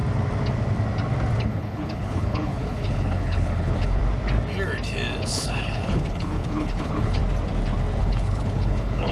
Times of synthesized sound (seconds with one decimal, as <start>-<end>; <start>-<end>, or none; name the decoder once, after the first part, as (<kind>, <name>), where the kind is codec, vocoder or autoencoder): 1.4-4.0 (codec, HILCodec); 5.2-7.2; 8.0-9.1